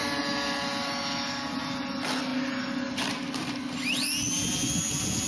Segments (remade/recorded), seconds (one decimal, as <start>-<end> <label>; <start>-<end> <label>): 0.0-5.3 recorded